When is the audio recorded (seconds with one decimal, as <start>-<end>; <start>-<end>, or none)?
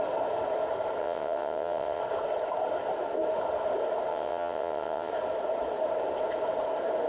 0.0-1.0; 2.0-4.1; 5.1-7.1